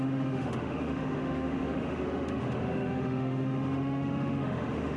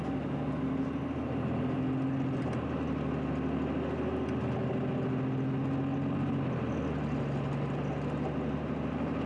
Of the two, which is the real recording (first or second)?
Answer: second